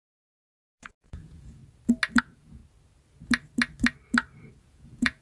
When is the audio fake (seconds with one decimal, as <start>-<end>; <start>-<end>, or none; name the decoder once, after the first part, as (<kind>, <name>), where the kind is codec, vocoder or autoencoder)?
0.0-1.6 (vocoder, Vocos); 2.2-2.6; 4.6-5.2